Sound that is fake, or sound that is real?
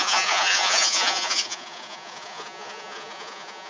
fake